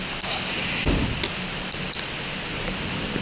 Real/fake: real